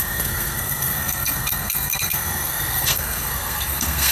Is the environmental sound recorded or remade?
remade